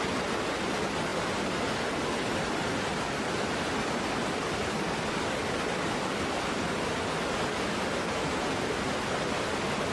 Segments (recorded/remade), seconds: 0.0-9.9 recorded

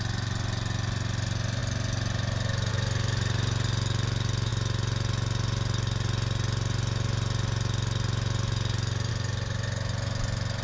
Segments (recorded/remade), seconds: 0.0-10.6 recorded

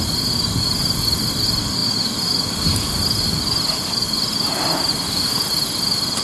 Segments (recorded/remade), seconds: 0.0-6.2 recorded

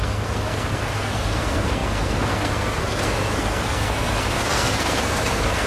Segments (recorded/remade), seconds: 0.0-5.7 remade

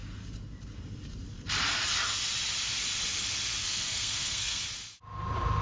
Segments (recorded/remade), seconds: 0.0-3.6 recorded; 3.6-4.6 remade; 4.6-5.6 recorded

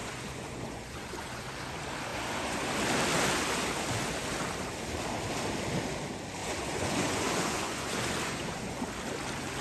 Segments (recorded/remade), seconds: 0.0-1.5 remade; 1.5-2.1 recorded; 2.1-2.6 remade; 2.6-6.4 recorded; 6.4-8.8 remade; 8.8-9.6 recorded

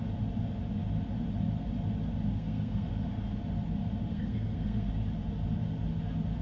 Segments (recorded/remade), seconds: 0.0-2.3 recorded; 2.3-2.9 remade; 2.9-4.1 recorded; 4.1-4.9 remade; 4.9-6.4 recorded

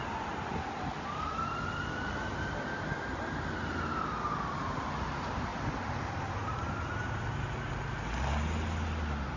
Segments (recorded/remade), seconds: 0.0-9.4 recorded